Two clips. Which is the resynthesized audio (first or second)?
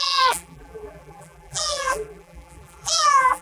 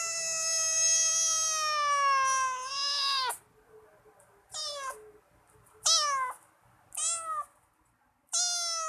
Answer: first